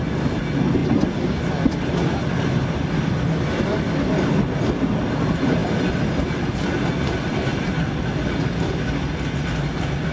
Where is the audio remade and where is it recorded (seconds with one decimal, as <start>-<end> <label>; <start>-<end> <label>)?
0.0-10.1 recorded